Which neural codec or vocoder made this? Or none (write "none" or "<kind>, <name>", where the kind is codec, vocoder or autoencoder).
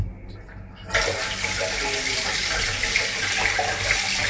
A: none